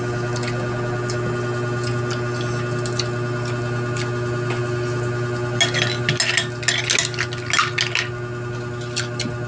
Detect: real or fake real